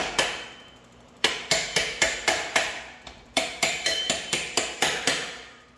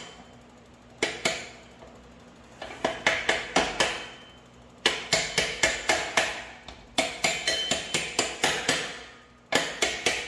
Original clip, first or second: second